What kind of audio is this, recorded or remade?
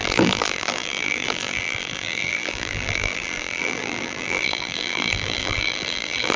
remade